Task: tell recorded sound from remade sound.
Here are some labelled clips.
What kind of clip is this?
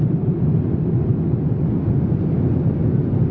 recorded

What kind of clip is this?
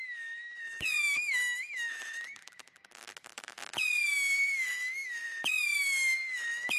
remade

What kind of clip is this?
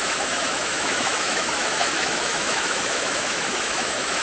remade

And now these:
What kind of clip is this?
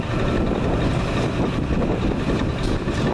recorded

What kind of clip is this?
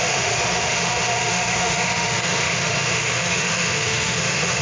remade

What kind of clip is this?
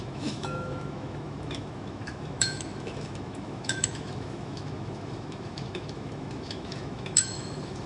remade